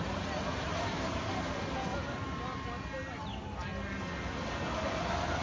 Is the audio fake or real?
real